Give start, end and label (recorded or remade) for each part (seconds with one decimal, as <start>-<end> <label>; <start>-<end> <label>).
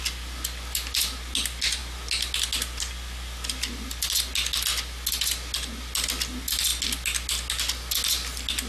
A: 0.0-8.7 recorded